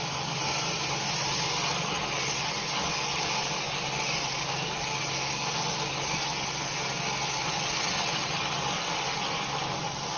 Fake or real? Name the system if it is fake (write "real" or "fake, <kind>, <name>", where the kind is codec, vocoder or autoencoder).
real